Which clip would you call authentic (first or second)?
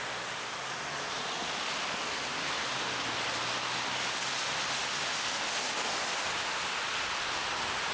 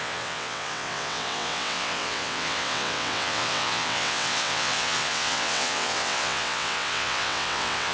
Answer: first